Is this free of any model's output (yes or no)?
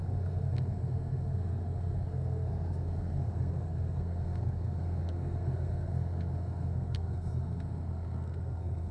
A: no